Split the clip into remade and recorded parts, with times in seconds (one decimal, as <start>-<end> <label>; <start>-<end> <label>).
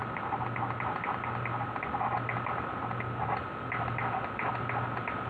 0.0-5.3 recorded